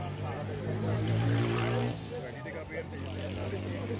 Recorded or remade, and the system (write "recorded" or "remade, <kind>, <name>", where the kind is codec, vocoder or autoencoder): recorded